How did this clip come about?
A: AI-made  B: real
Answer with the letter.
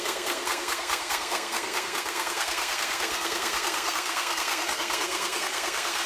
A